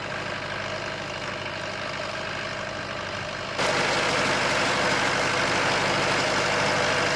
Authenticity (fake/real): real